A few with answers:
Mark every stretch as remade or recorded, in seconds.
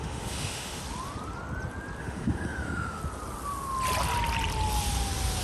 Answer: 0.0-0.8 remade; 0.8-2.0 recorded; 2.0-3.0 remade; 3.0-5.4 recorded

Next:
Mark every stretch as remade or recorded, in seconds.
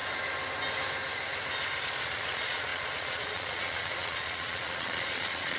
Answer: 0.0-1.8 recorded; 1.8-5.6 remade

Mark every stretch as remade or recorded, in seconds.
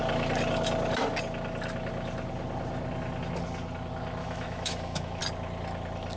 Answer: 0.0-4.2 recorded; 4.2-5.2 remade; 5.2-6.2 recorded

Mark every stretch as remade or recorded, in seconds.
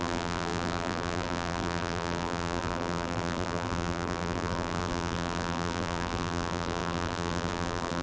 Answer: 0.0-8.0 remade